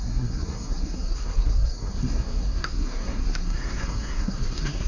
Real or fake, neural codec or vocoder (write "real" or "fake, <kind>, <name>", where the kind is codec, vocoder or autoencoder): fake, codec, SNAC